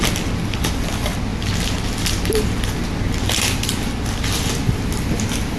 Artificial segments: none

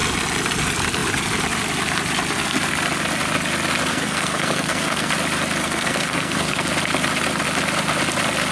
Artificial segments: 3.9-5.1; 5.6-6.7

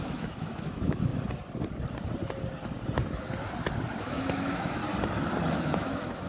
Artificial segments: 0.0-1.1; 4.0-4.8; 5.5-6.3